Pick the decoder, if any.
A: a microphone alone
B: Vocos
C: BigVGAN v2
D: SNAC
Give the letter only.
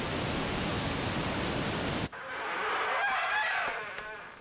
A